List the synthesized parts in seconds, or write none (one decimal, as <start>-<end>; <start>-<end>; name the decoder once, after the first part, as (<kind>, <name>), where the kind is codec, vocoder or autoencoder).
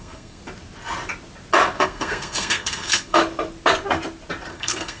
0.0-0.4 (codec, SNAC); 1.8-3.2; 4.5-5.0